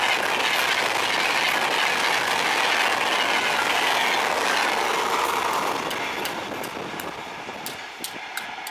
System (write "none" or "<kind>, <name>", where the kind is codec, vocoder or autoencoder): none